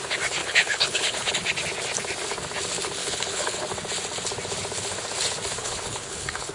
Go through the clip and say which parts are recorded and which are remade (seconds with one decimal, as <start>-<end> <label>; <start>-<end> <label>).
0.0-0.4 recorded; 0.4-1.3 remade; 1.3-3.0 recorded; 3.0-3.6 remade; 3.6-5.6 recorded; 5.6-6.5 remade